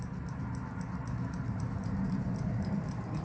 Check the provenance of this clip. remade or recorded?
remade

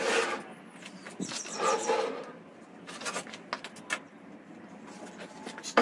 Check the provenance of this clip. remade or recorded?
recorded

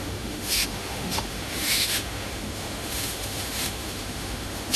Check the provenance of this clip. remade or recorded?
remade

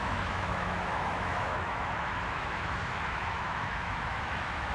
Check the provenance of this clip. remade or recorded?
remade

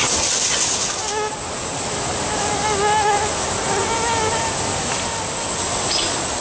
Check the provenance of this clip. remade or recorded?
recorded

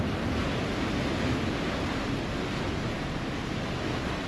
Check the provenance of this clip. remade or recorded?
recorded